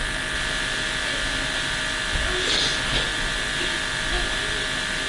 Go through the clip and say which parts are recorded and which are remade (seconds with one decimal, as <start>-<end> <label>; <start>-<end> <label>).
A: 0.0-5.1 recorded

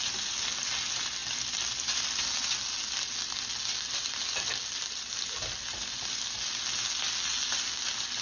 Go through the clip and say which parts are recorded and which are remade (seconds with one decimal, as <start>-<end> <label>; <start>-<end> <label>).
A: 0.0-8.2 recorded

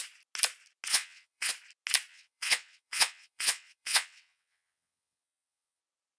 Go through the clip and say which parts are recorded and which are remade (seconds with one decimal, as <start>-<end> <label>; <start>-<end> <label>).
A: 0.0-0.9 recorded; 0.9-1.5 remade; 1.5-2.1 recorded; 2.1-5.8 remade; 5.8-6.2 recorded

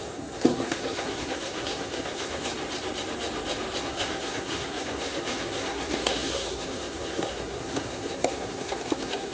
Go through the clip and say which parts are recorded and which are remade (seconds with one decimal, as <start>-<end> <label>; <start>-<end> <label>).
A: 0.0-2.5 remade; 2.5-3.8 recorded; 3.8-9.3 remade

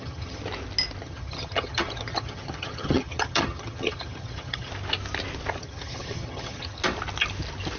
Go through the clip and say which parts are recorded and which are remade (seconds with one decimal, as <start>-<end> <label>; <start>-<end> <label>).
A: 0.0-0.4 remade; 0.4-1.0 recorded; 1.0-4.7 remade; 4.7-5.6 recorded; 5.6-6.8 remade; 6.8-7.8 recorded

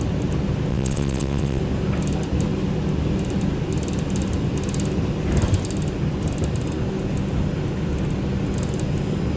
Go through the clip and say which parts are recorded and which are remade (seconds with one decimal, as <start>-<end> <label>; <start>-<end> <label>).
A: 0.0-0.7 recorded; 0.7-1.6 remade; 1.6-9.4 recorded

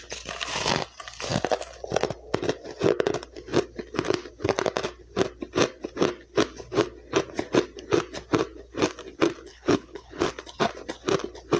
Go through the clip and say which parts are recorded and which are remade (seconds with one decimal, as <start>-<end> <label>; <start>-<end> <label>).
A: 0.0-9.5 recorded; 9.5-10.2 remade; 10.2-11.6 recorded